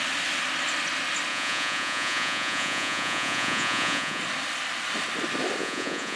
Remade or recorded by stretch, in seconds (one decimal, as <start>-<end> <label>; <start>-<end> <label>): 0.0-1.3 recorded; 1.3-4.2 remade; 4.2-5.6 recorded; 5.6-6.2 remade